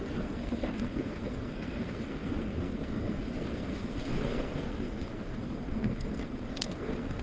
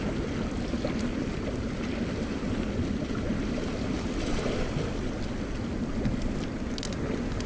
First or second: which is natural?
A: second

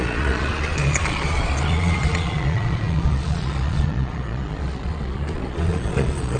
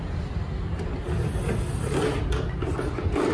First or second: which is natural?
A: second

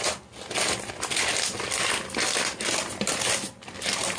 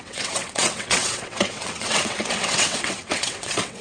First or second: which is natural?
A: first